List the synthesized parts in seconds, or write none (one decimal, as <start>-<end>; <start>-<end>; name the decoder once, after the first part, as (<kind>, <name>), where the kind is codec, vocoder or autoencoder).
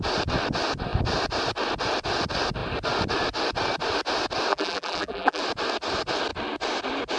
4.5-5.4 (vocoder, BigVGAN v2)